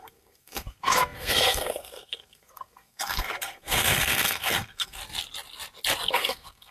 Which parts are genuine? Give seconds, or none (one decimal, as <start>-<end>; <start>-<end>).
5.0-6.1